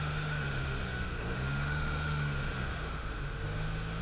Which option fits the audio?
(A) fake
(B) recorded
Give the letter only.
A